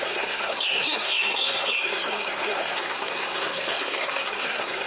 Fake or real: fake